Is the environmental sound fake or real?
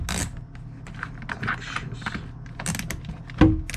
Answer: real